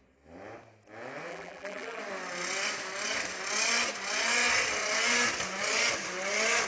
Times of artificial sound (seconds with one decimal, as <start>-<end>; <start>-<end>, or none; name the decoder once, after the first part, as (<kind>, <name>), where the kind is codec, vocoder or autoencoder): 1.3-2.0 (vocoder, BigVGAN v2)